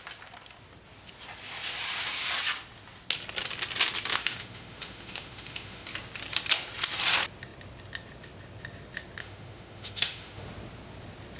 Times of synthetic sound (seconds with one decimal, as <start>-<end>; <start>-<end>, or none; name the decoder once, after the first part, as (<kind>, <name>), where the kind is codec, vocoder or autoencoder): 4.1-5.9 (autoencoder, DAC-VAE); 9.2-10.5